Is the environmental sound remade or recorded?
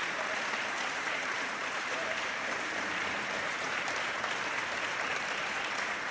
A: remade